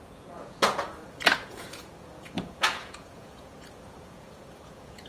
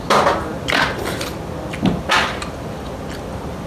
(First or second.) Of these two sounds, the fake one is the first